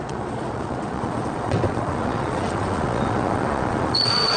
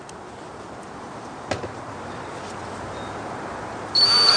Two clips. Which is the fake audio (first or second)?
first